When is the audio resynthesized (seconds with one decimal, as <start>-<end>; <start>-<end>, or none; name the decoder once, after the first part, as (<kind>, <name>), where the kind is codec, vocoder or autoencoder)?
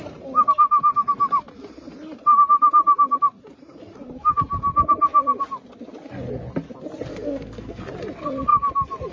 7.1-7.8 (codec, SNAC)